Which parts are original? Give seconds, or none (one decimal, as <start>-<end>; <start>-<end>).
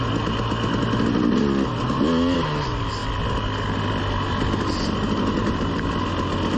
0.0-6.6